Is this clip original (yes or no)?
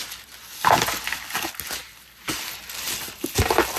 yes